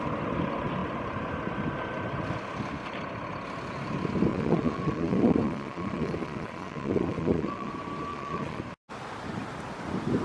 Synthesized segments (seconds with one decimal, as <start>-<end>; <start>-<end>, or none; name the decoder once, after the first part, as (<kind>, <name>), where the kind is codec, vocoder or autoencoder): 4.3-7.7 (vocoder, Vocos); 8.1-8.6